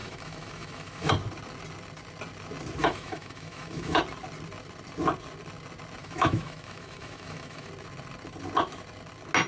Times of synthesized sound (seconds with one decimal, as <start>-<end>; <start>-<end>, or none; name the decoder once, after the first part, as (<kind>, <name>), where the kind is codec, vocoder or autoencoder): 0.0-1.1 (autoencoder, DAC-VAE); 2.8-4.0; 6.0-7.7